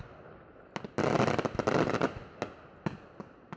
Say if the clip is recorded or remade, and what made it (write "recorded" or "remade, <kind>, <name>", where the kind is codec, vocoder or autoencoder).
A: recorded